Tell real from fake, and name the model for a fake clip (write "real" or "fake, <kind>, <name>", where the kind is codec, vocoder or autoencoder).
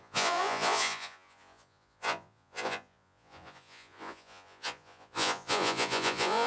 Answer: fake, vocoder, Vocos